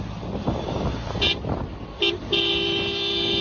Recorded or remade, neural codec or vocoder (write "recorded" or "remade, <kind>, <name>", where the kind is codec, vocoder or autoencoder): recorded